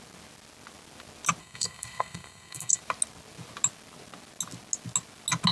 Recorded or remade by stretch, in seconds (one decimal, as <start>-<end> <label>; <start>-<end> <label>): 0.0-1.4 recorded; 1.4-2.8 remade; 2.8-5.5 recorded